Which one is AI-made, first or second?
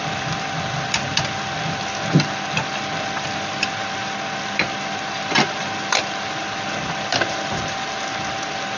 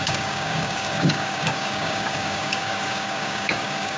second